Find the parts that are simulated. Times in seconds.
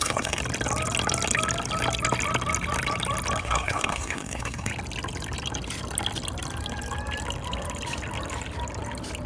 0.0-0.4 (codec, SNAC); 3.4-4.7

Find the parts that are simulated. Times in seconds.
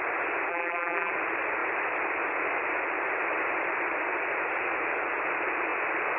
0.5-1.1 (vocoder, BigVGAN v2)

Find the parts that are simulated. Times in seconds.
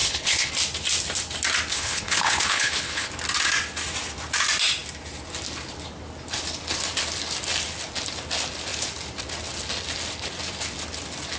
0.0-0.5 (codec, HILCodec); 1.7-3.1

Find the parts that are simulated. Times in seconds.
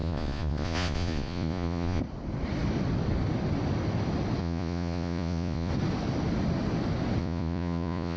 0.0-2.0 (vocoder, Vocos); 4.4-5.7; 7.2-8.2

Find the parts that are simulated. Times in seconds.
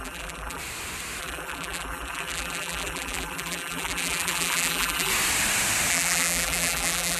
0.0-0.6 (vocoder, BigVGAN v2); 1.2-5.1; 5.9-7.2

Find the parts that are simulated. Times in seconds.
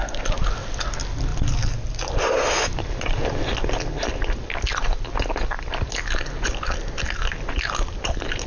none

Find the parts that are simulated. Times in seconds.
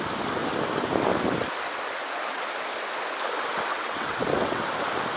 3.7-4.6 (vocoder, WaveNeXt)